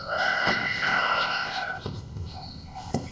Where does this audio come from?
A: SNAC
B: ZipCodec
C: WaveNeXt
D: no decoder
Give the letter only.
B